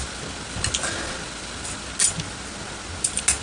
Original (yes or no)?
yes